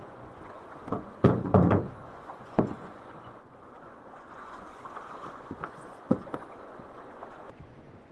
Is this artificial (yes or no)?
yes